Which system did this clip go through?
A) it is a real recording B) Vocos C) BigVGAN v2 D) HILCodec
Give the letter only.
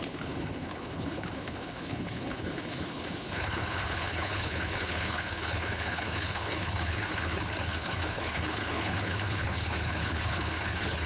D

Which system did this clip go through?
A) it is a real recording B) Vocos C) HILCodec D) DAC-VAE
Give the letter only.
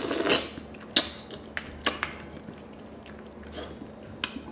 A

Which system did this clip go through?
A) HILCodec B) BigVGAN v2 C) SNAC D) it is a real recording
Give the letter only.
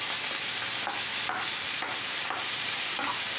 D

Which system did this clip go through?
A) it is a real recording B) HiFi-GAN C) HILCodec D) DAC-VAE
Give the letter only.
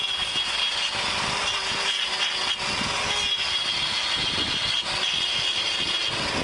A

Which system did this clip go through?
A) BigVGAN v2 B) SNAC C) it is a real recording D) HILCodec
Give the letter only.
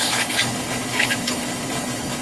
D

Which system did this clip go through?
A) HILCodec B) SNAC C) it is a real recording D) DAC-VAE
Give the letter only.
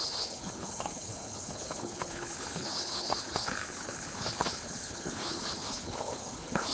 A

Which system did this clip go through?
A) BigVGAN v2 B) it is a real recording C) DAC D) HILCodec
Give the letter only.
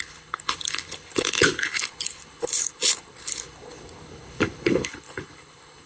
D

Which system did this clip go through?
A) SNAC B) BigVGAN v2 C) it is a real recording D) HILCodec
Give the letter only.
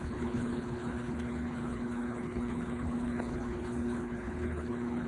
D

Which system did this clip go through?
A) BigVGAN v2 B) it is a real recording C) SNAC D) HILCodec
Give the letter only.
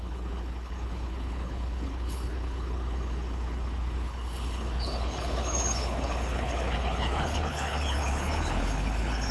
D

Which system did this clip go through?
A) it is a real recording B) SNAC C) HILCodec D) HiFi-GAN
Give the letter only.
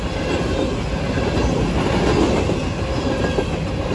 A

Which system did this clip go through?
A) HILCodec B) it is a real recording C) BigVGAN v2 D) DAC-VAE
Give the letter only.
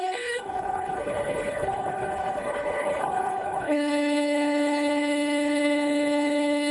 A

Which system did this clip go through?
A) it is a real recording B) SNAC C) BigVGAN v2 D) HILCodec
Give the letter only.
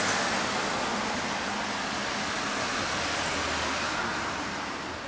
A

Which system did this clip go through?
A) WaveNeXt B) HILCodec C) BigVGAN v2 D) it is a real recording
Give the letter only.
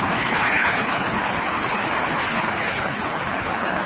B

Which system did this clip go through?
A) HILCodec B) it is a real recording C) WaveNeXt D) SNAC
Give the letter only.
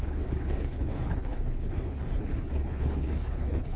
A